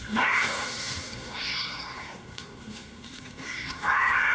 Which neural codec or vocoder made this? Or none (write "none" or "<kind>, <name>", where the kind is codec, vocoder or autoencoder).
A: codec, SNAC